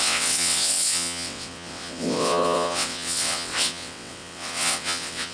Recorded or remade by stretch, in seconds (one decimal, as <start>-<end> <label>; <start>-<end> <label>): 0.0-5.3 remade